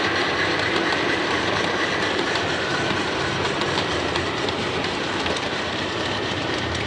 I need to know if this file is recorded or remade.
remade